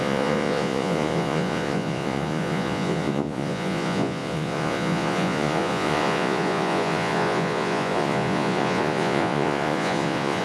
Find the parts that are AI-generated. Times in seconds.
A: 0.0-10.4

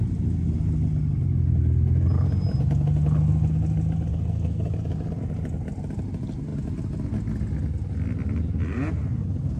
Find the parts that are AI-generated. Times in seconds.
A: 4.1-4.7

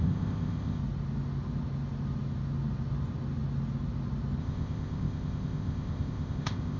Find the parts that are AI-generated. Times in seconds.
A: 0.0-0.8; 4.4-6.8

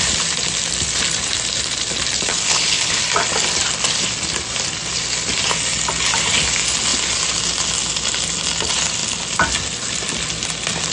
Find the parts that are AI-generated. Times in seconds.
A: 2.3-3.0

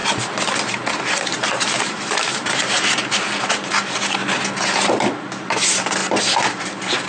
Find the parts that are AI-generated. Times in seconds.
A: 1.3-3.2

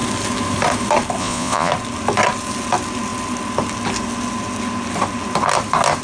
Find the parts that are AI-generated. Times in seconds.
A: 1.2-1.7

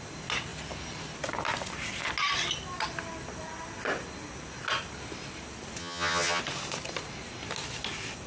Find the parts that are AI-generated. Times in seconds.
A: 5.8-6.4